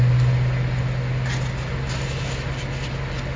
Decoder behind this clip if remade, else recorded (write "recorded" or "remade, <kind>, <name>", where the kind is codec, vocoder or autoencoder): recorded